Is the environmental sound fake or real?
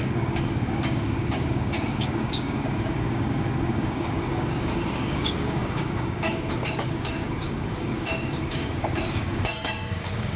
fake